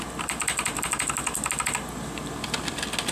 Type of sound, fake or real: real